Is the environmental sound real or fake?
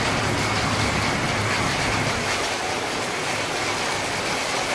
real